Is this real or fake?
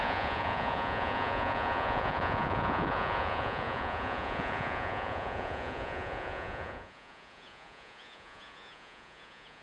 fake